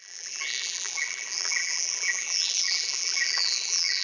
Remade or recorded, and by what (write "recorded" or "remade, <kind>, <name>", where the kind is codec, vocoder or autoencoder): remade, vocoder, BigVGAN v2